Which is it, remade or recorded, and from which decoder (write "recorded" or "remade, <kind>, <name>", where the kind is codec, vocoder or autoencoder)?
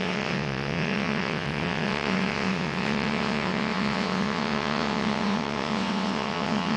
remade, vocoder, WaveNeXt